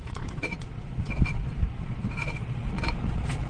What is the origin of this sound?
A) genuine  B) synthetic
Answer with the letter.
B